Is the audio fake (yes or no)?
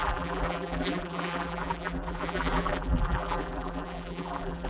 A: yes